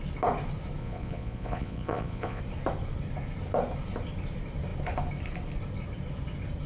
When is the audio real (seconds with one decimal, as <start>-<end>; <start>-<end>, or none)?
0.0-0.8; 2.4-6.7